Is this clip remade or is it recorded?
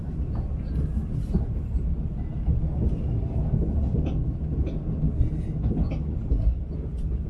recorded